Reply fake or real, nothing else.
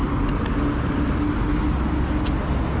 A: real